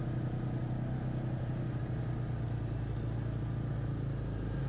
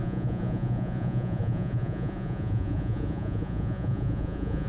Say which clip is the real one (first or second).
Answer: first